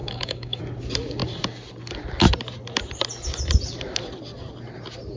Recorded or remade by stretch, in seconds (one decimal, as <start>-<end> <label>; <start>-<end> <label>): 0.0-0.6 remade; 0.6-5.2 recorded